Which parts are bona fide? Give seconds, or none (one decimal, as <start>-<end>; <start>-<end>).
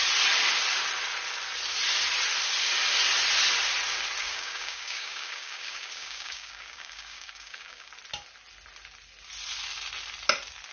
0.0-4.2; 7.9-10.7